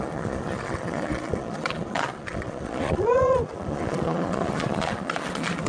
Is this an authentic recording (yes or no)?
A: no